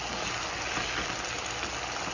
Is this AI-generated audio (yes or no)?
no